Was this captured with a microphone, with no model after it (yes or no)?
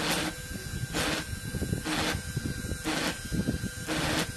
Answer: yes